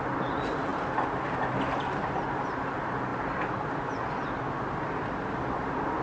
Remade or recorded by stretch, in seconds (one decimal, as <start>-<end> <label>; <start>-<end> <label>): 0.0-6.0 recorded